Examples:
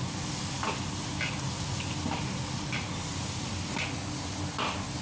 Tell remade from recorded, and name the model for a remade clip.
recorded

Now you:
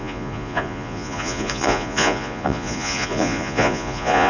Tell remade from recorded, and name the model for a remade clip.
remade, vocoder, Vocos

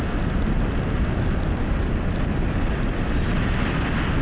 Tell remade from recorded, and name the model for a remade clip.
recorded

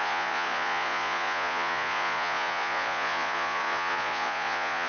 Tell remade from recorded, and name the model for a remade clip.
remade, vocoder, Vocos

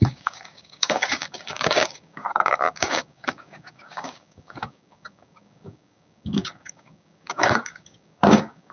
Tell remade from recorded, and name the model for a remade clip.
remade, codec, DAC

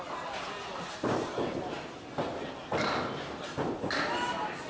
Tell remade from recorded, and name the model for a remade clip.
recorded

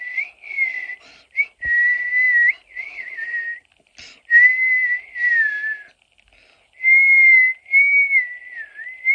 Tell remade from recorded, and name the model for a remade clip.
recorded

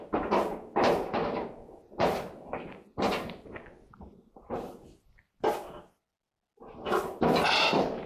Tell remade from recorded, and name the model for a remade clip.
recorded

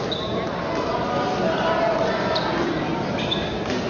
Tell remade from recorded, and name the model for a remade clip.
recorded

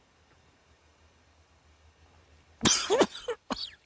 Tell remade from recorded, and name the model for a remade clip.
recorded